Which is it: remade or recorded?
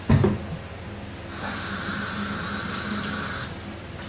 recorded